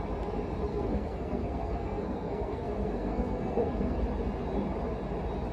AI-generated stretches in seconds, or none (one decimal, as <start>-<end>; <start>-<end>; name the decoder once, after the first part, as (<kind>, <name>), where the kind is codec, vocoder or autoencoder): 0.7-4.0 (codec, SNAC)